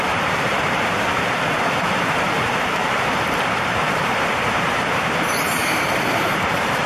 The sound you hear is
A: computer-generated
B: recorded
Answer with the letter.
A